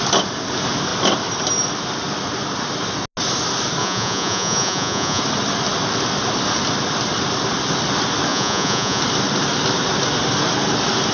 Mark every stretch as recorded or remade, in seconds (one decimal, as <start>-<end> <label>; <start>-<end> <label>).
0.0-3.8 recorded; 3.8-5.2 remade; 5.2-8.3 recorded; 8.3-9.0 remade; 9.0-11.1 recorded